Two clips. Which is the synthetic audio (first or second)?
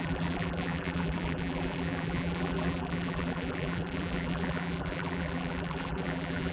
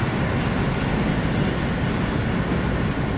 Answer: first